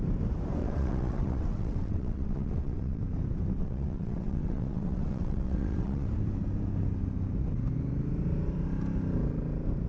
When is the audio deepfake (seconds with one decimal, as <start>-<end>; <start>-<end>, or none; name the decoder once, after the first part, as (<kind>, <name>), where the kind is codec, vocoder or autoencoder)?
0.6-3.0 (vocoder, WaveNeXt); 3.6-6.1

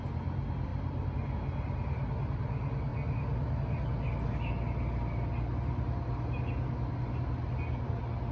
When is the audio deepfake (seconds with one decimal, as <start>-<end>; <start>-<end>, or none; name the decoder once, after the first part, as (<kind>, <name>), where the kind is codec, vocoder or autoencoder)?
none

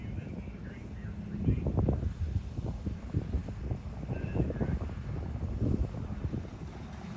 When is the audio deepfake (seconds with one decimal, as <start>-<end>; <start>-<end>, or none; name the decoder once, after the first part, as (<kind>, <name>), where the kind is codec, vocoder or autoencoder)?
none

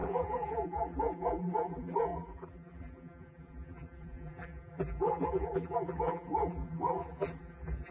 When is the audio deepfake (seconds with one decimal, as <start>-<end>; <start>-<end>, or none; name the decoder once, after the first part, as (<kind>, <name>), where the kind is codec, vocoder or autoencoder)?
0.0-7.9 (vocoder, BigVGAN v2)